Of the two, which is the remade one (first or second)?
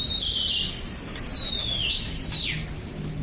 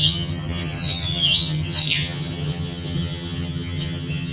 second